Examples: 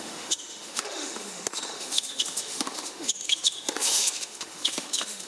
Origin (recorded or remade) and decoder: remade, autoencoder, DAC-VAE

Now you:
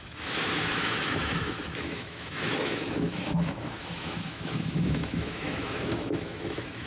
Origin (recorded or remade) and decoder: remade, autoencoder, DAC-VAE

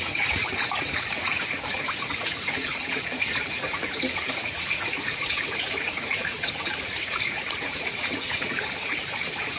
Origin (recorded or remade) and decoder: remade, vocoder, Vocos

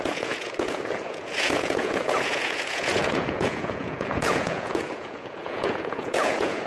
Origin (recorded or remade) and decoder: remade, vocoder, Vocos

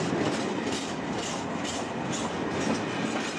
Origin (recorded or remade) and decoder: recorded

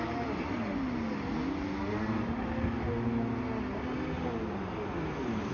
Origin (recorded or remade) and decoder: recorded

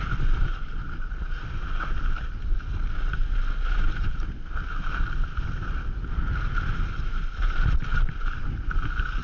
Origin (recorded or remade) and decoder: recorded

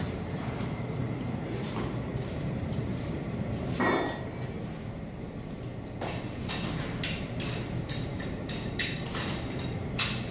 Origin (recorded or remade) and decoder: remade, vocoder, BigVGAN v2